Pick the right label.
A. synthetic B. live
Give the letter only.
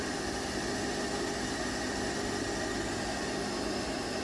B